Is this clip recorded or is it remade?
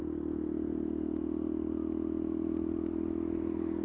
recorded